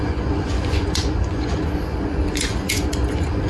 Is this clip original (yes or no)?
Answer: no